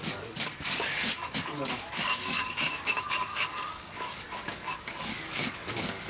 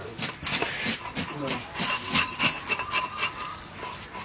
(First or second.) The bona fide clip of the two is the second